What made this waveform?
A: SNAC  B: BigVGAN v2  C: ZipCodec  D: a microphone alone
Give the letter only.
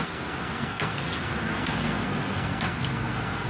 A